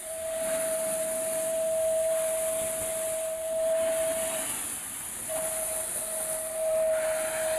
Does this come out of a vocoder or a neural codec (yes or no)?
no